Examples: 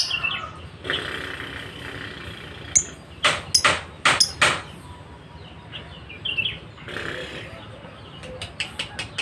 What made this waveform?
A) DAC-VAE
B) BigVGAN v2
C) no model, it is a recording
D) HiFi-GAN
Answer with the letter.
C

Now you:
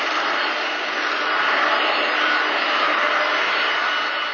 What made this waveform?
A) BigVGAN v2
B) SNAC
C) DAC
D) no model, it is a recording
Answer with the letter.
D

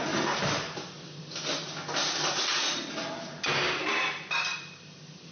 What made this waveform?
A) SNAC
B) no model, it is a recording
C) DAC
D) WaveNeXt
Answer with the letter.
B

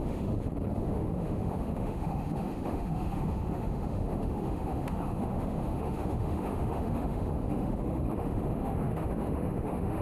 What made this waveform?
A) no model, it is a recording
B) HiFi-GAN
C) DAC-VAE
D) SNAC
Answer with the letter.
C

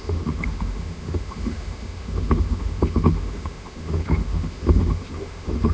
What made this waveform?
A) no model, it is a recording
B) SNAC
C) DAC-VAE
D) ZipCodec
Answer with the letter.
C